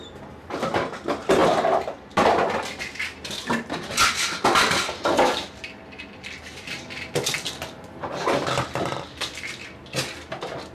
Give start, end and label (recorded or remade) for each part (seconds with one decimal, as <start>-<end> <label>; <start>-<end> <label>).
0.0-10.7 recorded